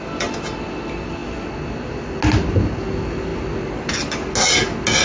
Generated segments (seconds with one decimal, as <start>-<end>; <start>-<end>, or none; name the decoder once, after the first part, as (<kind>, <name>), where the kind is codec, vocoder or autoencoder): none